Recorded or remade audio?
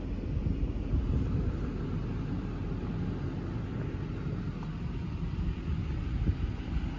recorded